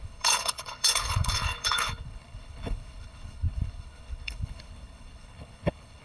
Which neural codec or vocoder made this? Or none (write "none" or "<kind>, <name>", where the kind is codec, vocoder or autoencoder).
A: codec, HILCodec